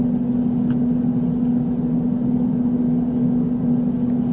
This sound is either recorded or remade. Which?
recorded